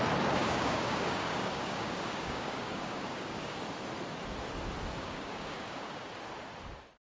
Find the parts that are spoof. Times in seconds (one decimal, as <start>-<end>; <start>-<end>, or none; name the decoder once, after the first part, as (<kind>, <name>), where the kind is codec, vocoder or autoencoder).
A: 0.4-3.6 (codec, DAC); 5.0-6.1